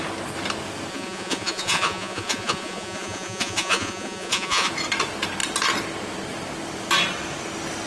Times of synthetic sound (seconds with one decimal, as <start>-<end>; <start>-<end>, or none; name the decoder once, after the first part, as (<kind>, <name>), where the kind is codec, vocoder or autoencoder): 0.9-4.7 (vocoder, Vocos)